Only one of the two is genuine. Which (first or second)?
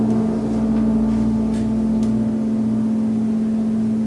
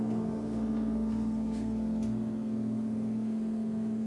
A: first